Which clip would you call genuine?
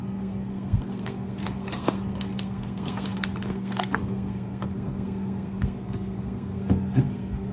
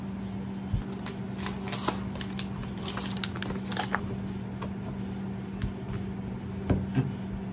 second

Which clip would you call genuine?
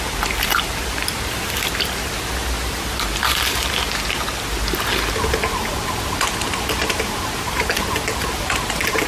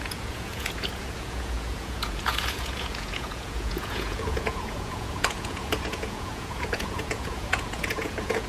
first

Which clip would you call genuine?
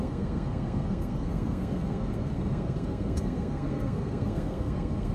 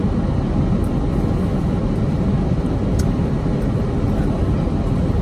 second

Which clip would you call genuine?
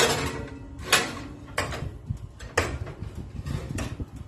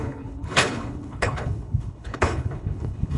first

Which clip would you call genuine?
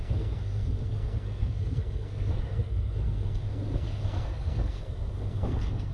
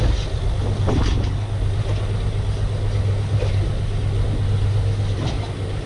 second